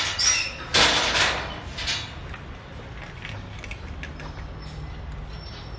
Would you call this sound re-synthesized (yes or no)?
no